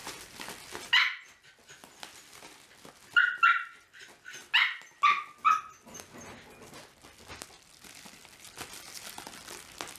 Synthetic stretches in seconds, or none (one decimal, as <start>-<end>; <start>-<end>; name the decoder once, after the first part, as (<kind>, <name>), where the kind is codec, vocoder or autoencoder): none